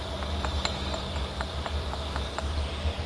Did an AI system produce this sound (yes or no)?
no